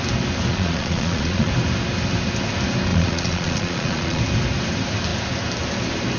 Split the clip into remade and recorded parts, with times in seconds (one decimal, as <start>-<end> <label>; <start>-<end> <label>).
0.0-0.5 recorded; 0.5-1.5 remade; 1.5-2.9 recorded; 2.9-4.2 remade; 4.2-6.2 recorded